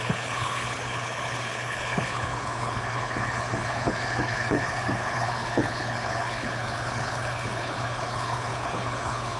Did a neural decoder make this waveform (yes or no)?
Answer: yes